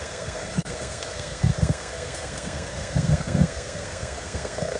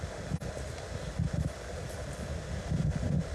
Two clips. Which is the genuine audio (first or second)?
second